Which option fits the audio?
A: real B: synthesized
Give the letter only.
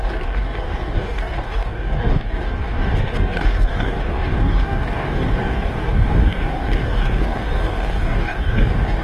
B